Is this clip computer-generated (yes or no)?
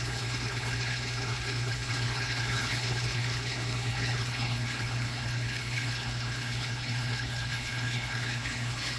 yes